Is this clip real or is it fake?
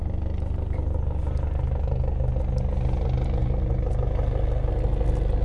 real